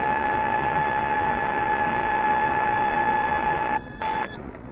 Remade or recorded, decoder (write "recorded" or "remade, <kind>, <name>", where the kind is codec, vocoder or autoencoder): remade, vocoder, Vocos